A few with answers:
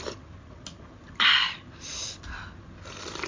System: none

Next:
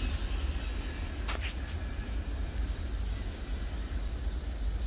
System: none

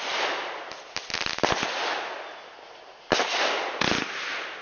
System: none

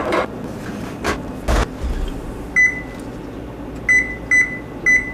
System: none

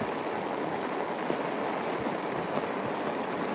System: none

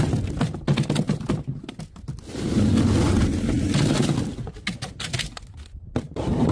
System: none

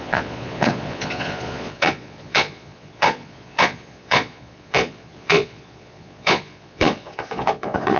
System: vocoder, Vocos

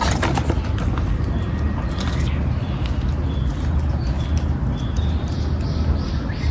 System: none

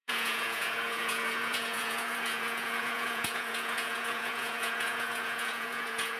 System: vocoder, Vocos